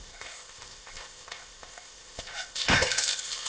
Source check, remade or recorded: remade